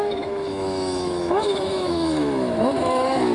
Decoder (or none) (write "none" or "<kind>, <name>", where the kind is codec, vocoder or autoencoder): autoencoder, DAC-VAE